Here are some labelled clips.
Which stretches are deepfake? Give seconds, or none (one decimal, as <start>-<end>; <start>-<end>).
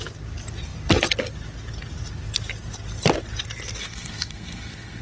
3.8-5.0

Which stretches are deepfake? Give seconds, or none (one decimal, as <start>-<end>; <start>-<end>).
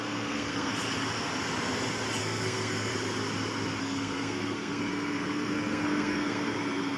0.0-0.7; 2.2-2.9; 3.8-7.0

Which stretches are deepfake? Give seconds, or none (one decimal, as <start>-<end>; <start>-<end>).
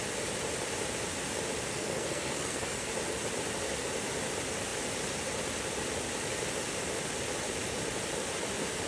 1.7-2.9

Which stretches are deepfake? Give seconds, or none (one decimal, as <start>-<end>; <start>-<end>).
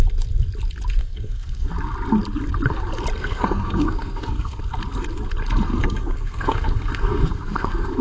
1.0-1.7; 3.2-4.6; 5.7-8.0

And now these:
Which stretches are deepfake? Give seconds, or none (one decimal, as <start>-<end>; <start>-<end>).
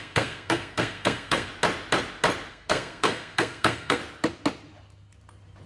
0.0-1.5; 2.5-4.0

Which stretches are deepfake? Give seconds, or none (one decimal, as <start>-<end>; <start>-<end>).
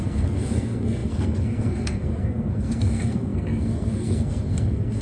0.0-5.0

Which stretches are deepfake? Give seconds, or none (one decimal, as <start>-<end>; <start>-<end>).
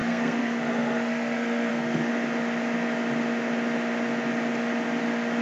0.0-2.1